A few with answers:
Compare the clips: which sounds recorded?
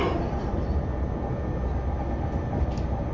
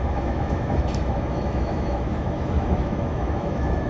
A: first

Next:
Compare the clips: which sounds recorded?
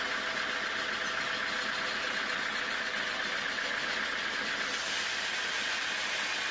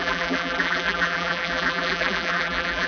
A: first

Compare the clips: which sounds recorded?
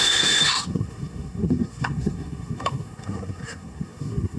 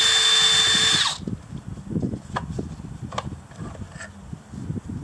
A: second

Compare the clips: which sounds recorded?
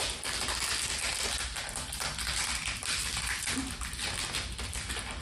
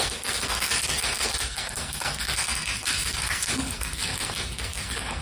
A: first